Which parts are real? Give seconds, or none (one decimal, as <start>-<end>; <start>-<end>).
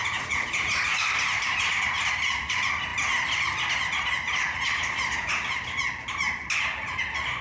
0.8-7.4